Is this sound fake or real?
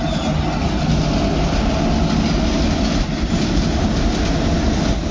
real